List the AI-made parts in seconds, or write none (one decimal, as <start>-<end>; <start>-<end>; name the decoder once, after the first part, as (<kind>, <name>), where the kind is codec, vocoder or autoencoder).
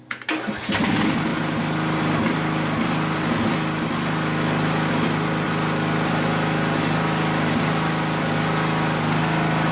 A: none